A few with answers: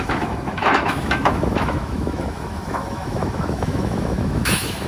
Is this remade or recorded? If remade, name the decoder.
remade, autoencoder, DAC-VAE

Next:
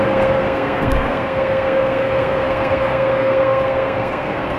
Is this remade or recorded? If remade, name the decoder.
remade, codec, SNAC